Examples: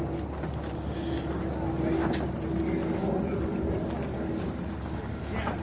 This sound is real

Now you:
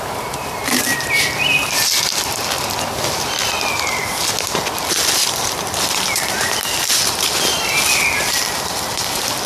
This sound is real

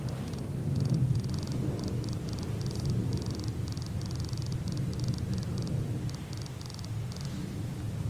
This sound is real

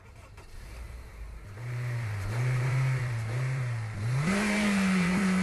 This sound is fake